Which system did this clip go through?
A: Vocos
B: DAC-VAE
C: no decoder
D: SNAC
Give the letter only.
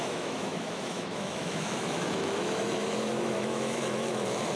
B